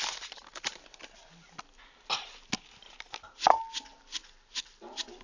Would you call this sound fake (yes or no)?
no